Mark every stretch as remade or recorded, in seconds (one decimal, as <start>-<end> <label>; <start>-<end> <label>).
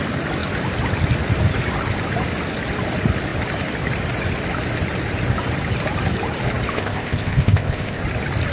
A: 0.0-6.7 recorded; 6.7-8.0 remade; 8.0-8.5 recorded